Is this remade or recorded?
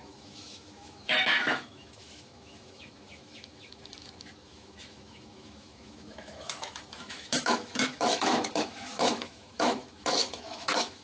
remade